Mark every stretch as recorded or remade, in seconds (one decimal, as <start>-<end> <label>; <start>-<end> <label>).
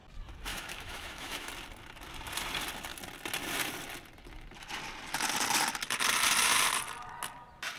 0.0-0.5 recorded; 0.5-1.5 remade; 1.5-7.8 recorded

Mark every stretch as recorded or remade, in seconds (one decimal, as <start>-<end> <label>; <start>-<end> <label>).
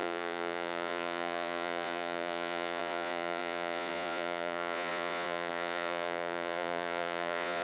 0.0-7.6 remade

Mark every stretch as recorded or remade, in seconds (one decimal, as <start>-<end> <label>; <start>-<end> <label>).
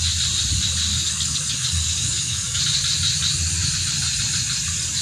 0.0-0.9 recorded; 0.9-2.6 remade; 2.6-5.0 recorded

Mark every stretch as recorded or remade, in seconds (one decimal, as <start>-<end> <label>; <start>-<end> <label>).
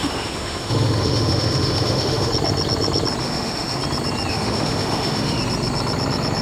0.0-2.3 remade; 2.3-3.2 recorded; 3.2-3.8 remade; 3.8-4.3 recorded; 4.3-5.4 remade; 5.4-6.4 recorded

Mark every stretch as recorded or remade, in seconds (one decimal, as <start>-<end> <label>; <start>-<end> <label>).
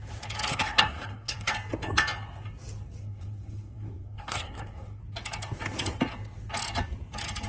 0.0-0.5 recorded; 0.5-1.5 remade; 1.5-3.0 recorded; 3.0-5.0 remade; 5.0-7.5 recorded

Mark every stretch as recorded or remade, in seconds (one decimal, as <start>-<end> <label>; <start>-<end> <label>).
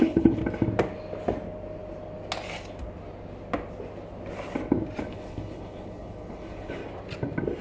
0.0-0.4 remade; 0.4-5.0 recorded; 5.0-6.8 remade; 6.8-7.6 recorded